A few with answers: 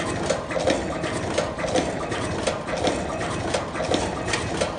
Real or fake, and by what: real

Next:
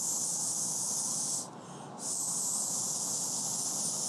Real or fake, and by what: real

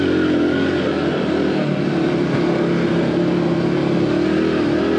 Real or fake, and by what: real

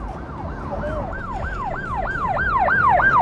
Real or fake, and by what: real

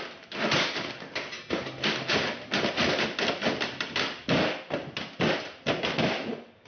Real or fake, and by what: real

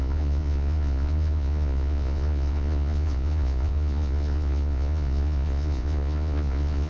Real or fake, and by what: fake, vocoder, Vocos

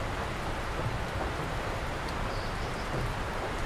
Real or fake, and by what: fake, vocoder, BigVGAN v2